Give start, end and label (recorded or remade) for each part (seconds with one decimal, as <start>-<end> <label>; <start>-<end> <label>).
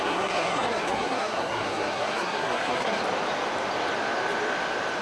0.0-3.0 remade; 3.0-5.0 recorded